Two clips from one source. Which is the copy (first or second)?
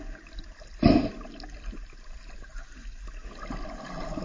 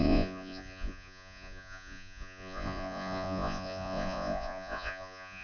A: second